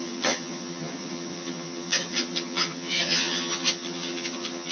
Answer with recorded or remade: remade